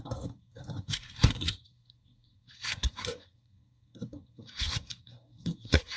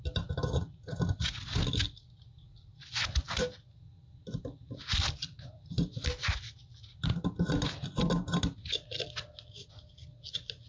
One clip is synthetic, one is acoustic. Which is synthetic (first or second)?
first